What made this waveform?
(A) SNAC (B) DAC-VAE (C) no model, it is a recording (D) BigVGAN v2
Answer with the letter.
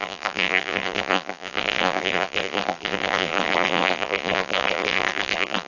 D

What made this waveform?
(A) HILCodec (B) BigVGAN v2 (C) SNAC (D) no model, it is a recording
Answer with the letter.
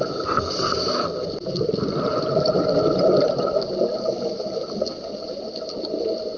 D